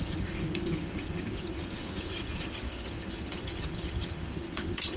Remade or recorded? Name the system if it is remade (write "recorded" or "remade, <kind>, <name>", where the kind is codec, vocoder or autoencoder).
remade, vocoder, HiFi-GAN